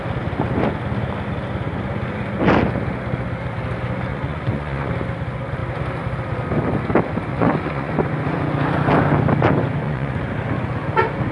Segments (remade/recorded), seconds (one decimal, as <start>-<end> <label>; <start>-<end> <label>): 0.0-4.1 recorded; 4.1-4.9 remade; 4.9-7.3 recorded; 7.3-7.9 remade; 7.9-9.8 recorded; 9.8-10.3 remade; 10.3-11.3 recorded